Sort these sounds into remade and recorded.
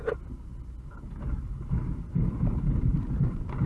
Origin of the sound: recorded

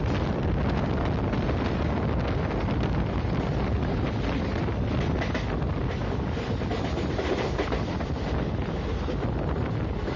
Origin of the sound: recorded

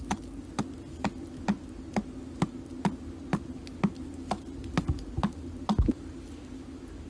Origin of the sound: recorded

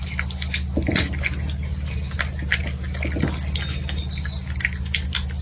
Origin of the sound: recorded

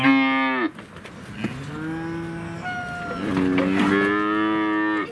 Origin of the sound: recorded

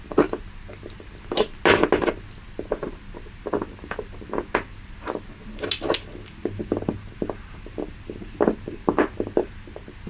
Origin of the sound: recorded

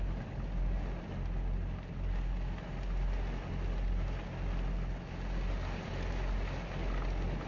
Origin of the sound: recorded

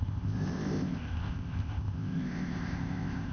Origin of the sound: remade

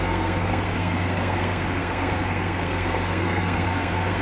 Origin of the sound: remade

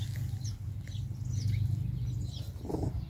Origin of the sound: recorded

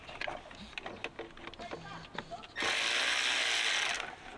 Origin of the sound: recorded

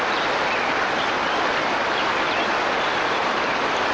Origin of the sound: recorded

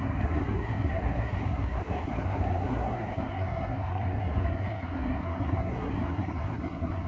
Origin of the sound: remade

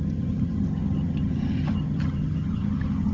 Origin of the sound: remade